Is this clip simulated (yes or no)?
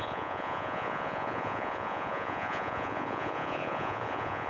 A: yes